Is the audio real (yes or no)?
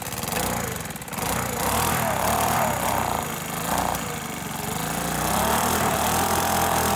no